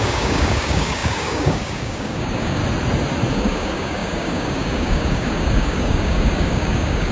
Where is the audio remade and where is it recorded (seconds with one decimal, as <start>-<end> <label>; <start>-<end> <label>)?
0.0-2.6 remade; 2.6-3.3 recorded; 3.3-7.1 remade